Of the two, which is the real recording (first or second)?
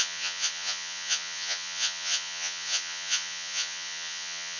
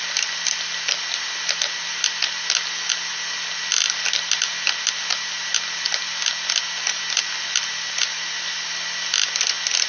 second